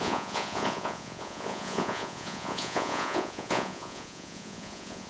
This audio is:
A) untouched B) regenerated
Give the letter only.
B